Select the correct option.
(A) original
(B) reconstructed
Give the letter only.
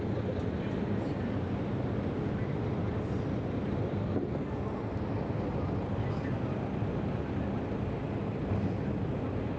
A